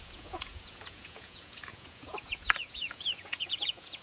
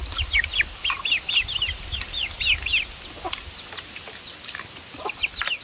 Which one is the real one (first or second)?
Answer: second